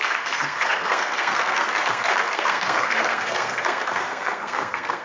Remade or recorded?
remade